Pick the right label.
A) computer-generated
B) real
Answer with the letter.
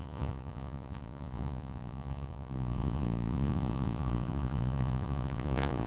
A